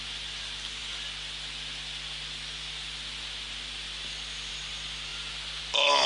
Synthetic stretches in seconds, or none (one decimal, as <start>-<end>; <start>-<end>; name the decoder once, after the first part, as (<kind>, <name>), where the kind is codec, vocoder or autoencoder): none